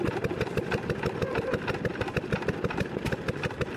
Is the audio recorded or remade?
remade